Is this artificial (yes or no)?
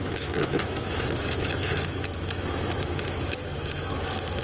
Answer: yes